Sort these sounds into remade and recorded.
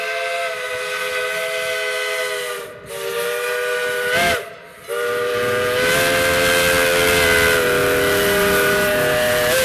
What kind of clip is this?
recorded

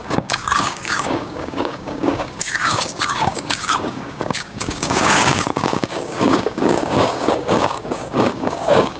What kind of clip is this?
remade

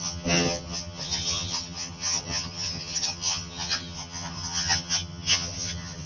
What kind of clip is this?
remade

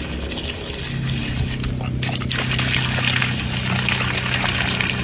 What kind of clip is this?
recorded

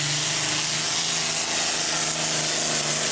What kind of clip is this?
recorded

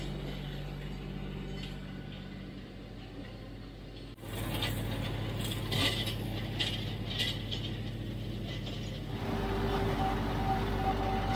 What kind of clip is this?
recorded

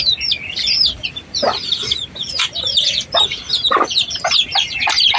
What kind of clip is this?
remade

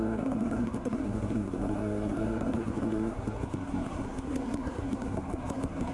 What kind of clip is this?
remade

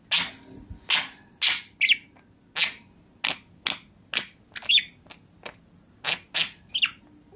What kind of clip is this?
recorded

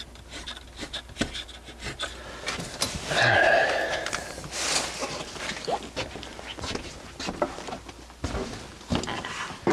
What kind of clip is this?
recorded